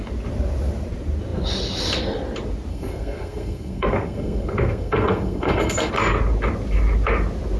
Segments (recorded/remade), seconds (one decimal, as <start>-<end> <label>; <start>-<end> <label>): 0.0-2.7 recorded; 2.7-5.9 remade; 5.9-7.6 recorded